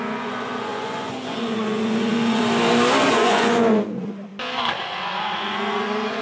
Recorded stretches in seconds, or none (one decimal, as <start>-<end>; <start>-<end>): 2.4-3.1; 4.3-5.0